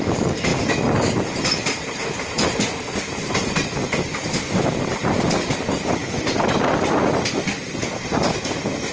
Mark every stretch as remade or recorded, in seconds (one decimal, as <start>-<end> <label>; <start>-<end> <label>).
0.0-3.8 recorded; 3.8-5.5 remade; 5.5-6.0 recorded; 6.0-7.8 remade; 7.8-8.9 recorded